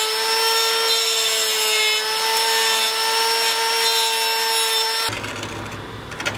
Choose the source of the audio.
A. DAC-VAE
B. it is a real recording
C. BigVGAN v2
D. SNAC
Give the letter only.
B